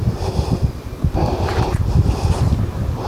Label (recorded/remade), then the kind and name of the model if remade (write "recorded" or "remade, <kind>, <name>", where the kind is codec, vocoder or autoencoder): recorded